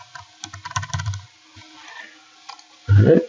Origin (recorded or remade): recorded